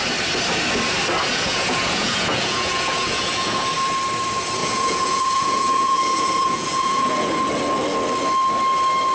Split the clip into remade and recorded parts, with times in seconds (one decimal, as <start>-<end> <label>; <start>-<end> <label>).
0.0-1.3 recorded; 1.3-3.7 remade; 3.7-4.6 recorded; 4.6-7.4 remade; 7.4-9.1 recorded